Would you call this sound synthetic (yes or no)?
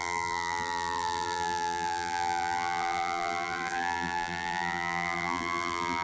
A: yes